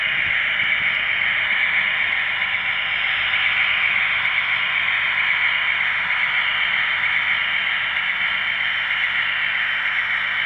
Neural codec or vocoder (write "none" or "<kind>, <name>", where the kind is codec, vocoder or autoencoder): none